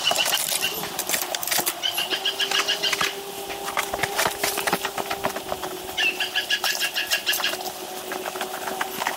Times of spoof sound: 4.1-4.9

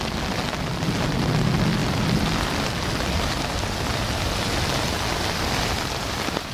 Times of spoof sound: none

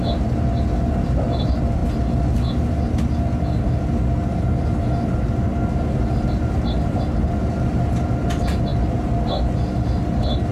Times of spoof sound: 8.7-9.3

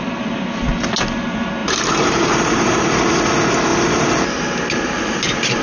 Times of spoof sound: 1.6-3.1; 3.7-4.2